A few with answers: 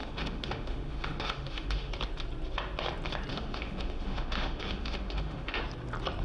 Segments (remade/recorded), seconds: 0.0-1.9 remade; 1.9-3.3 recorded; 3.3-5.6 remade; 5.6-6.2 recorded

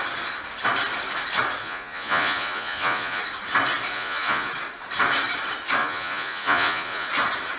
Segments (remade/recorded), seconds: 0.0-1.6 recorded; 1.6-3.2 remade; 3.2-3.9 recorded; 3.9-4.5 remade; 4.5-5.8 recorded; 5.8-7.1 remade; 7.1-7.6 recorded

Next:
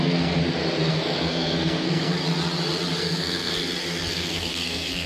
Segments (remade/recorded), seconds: 0.0-0.4 remade; 0.4-0.9 recorded; 0.9-2.2 remade; 2.2-3.0 recorded; 3.0-3.5 remade; 3.5-4.1 recorded; 4.1-5.1 remade

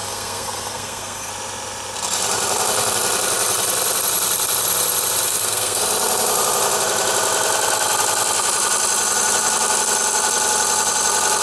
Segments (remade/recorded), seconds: 0.0-1.3 remade; 1.3-5.3 recorded; 5.3-5.8 remade; 5.8-11.4 recorded

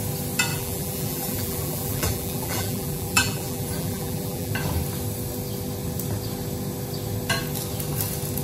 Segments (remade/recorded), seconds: 0.0-0.5 recorded; 0.5-4.5 remade; 4.5-8.4 recorded